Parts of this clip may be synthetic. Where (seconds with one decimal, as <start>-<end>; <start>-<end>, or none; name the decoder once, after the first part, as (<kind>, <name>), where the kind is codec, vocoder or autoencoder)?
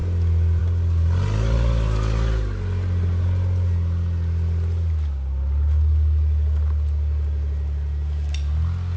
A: none